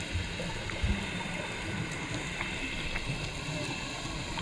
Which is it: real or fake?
real